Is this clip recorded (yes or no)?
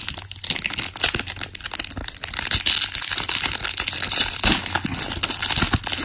yes